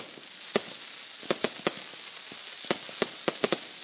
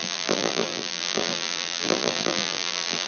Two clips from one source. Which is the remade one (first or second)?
second